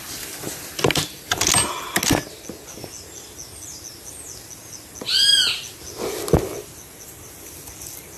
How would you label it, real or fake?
real